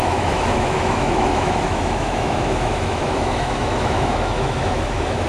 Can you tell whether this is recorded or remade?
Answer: remade